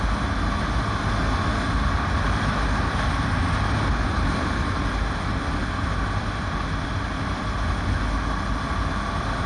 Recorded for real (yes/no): yes